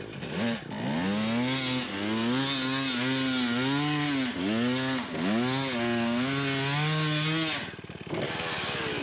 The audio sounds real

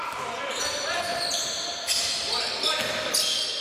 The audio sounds real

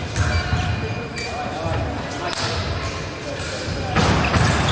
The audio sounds real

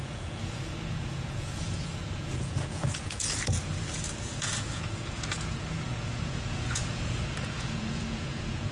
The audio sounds fake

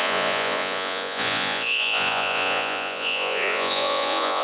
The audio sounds fake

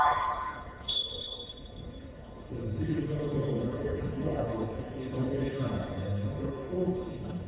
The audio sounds fake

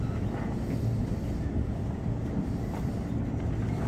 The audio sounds real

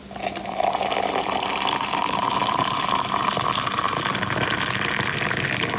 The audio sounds real